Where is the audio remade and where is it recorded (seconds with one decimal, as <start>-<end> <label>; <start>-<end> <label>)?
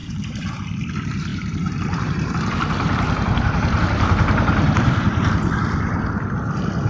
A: 0.0-0.5 remade; 0.5-1.3 recorded; 1.3-5.3 remade; 5.3-6.9 recorded